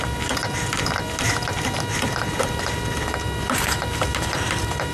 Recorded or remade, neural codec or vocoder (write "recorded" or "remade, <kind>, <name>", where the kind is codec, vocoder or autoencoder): recorded